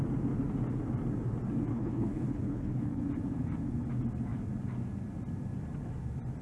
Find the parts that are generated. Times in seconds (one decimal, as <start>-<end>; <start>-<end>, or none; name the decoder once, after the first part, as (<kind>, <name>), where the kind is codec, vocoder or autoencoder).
1.7-3.0 (codec, HILCodec)